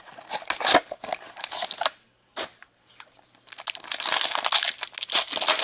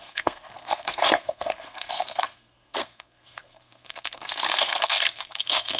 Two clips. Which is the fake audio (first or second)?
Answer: second